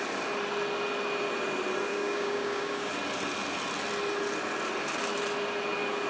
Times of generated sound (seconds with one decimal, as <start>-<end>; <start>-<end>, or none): 1.9-2.9